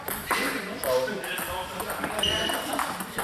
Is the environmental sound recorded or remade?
recorded